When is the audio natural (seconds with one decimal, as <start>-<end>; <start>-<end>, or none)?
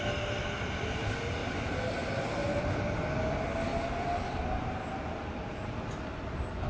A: 0.0-1.4; 2.0-6.7